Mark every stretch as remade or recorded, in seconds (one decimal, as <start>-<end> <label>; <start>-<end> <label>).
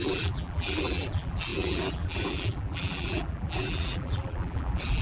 0.0-5.0 remade